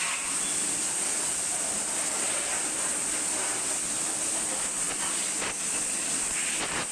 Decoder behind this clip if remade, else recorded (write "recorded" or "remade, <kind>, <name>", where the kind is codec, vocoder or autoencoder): recorded